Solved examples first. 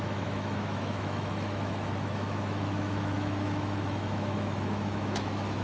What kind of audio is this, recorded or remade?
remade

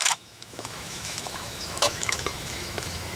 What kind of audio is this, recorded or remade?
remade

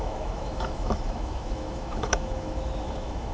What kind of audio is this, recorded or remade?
remade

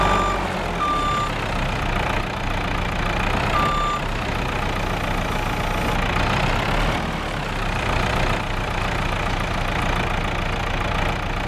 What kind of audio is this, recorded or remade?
recorded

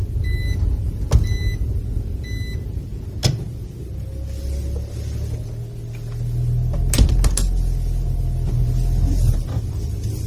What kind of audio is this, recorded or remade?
recorded